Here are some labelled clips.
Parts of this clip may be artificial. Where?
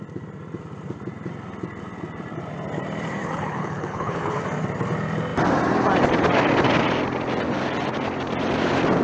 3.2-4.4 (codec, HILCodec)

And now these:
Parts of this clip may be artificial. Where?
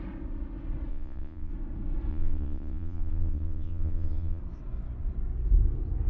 0.9-1.5 (vocoder, Vocos); 2.1-4.4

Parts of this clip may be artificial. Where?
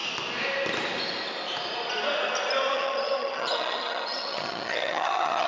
2.7-5.5 (vocoder, HiFi-GAN)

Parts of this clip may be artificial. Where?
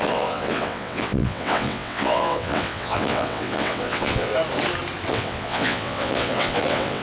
0.0-4.3 (vocoder, WaveNeXt); 5.1-7.0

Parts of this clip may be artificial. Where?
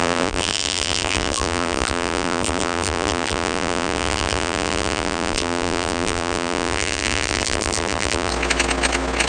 0.0-8.3 (vocoder, BigVGAN v2)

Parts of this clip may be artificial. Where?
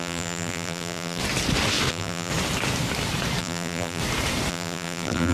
0.0-1.2 (vocoder, BigVGAN v2); 1.9-2.3; 3.4-4.0; 4.5-5.3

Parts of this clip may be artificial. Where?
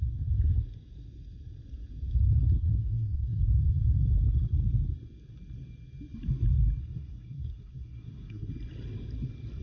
2.6-3.4 (codec, SNAC); 6.8-8.5